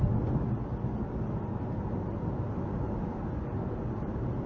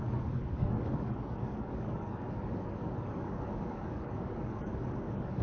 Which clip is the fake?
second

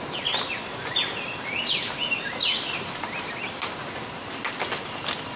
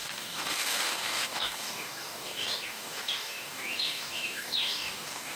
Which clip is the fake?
second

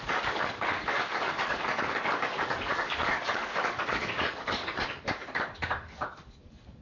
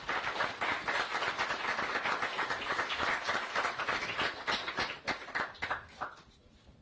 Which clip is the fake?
first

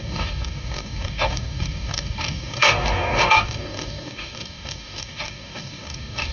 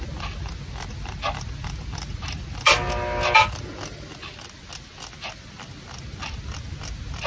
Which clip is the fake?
first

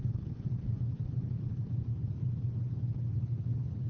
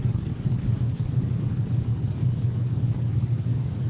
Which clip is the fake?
second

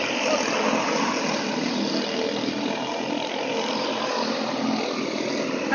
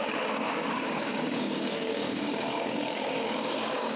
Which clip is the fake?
second